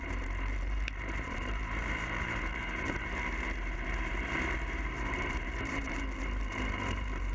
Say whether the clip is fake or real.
fake